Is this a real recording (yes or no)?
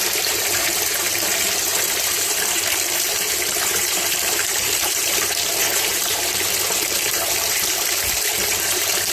no